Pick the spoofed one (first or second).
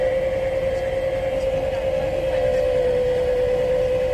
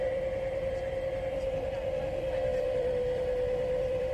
second